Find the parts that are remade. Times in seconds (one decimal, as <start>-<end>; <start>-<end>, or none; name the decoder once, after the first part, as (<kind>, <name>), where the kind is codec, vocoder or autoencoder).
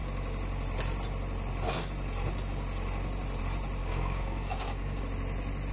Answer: 3.8-5.0 (codec, DAC)